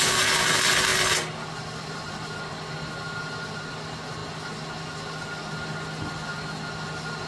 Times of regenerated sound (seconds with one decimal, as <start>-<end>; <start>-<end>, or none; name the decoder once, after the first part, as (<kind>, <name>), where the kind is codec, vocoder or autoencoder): none